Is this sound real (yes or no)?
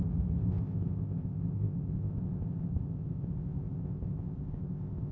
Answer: no